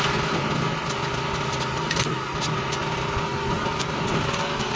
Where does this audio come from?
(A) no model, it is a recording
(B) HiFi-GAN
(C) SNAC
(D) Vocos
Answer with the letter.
A